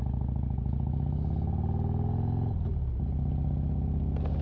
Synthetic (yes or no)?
no